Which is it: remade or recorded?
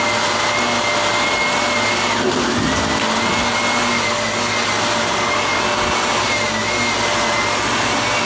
recorded